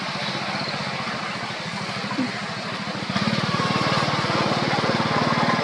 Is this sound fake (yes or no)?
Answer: no